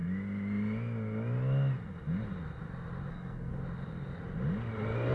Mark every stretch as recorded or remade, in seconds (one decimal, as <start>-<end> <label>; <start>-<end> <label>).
0.0-3.1 recorded; 3.1-3.5 remade; 3.5-5.1 recorded